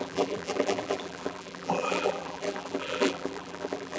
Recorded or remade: remade